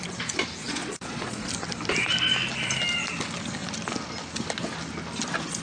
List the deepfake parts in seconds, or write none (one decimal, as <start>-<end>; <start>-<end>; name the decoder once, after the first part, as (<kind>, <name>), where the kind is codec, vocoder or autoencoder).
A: 0.6-1.5 (vocoder, Vocos)